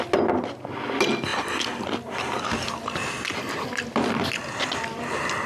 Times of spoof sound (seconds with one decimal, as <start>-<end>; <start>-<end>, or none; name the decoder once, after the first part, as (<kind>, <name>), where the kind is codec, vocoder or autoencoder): none